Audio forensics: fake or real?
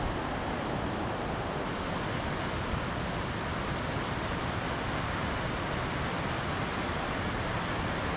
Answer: real